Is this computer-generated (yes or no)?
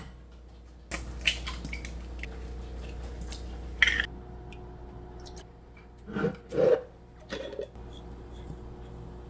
no